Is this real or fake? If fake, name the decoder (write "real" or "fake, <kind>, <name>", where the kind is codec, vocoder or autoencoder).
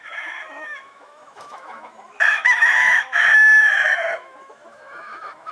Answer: fake, autoencoder, DAC-VAE